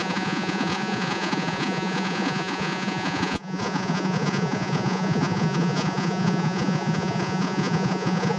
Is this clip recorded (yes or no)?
no